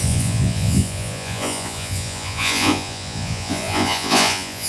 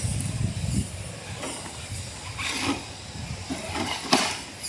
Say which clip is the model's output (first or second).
first